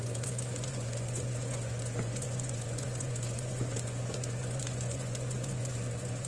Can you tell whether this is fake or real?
fake